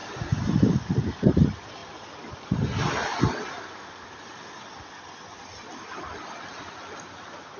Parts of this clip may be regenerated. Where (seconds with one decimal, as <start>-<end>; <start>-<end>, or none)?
none